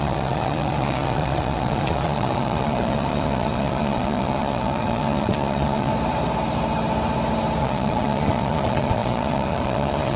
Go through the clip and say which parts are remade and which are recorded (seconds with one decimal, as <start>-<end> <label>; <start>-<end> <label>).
0.0-5.9 remade; 5.9-7.6 recorded; 7.6-10.2 remade